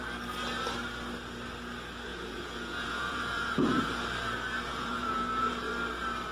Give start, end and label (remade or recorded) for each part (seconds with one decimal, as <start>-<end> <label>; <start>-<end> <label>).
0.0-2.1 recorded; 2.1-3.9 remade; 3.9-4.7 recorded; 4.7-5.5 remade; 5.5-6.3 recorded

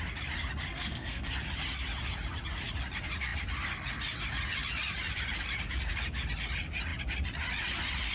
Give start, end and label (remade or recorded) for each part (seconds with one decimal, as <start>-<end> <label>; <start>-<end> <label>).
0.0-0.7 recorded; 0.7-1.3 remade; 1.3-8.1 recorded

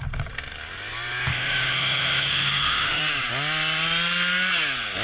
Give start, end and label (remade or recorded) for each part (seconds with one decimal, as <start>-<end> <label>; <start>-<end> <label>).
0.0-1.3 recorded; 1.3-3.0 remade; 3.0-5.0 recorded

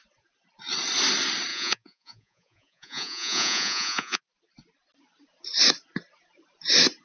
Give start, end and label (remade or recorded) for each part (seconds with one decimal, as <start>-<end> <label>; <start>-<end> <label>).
0.0-1.5 recorded; 1.5-4.2 remade; 4.2-7.0 recorded